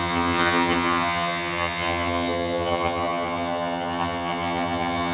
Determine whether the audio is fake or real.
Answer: fake